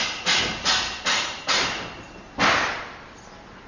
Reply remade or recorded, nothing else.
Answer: recorded